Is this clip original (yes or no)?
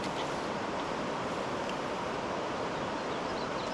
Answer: yes